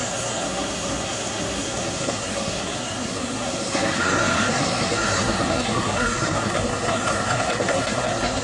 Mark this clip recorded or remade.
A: remade